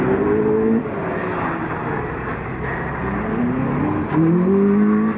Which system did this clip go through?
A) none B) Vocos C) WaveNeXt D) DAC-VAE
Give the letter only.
A